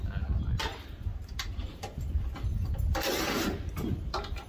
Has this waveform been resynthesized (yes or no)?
no